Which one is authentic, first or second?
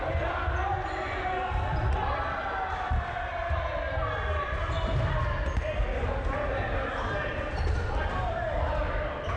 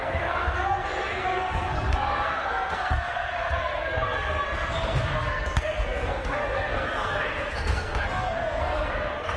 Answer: first